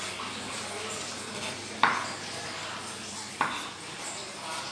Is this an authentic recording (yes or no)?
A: yes